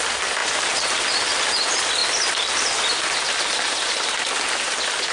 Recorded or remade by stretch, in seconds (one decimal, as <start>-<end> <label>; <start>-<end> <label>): 0.0-5.1 recorded